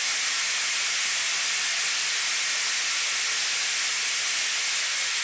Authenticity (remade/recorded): recorded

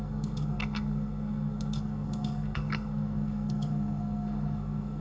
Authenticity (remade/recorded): remade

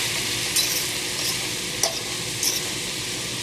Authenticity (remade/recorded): recorded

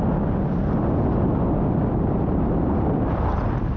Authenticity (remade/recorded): recorded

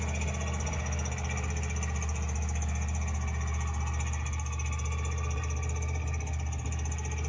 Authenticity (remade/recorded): recorded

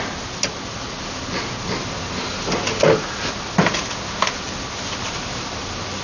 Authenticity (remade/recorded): recorded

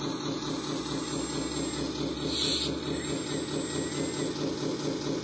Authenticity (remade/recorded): recorded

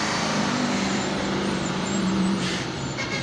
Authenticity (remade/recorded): remade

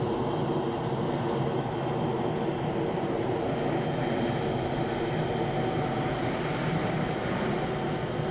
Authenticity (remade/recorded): recorded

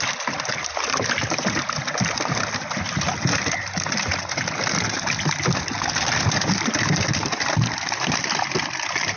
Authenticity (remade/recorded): recorded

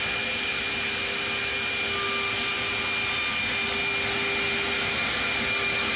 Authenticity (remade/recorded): recorded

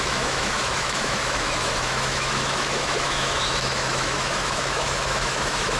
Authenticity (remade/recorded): remade